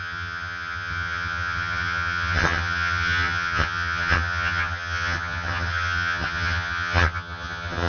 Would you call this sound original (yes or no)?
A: no